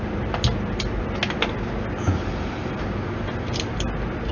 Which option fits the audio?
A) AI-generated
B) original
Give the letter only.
B